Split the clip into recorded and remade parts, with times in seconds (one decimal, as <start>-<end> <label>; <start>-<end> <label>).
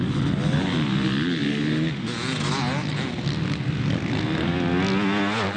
0.0-5.6 recorded